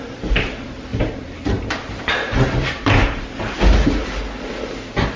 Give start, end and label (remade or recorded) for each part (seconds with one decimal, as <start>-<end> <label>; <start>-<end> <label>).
0.0-0.9 recorded; 0.9-3.2 remade; 3.2-5.2 recorded